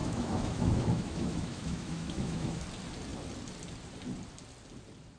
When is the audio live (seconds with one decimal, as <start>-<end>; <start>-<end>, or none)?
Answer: 2.6-5.2